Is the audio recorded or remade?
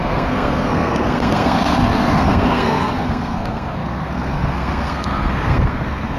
remade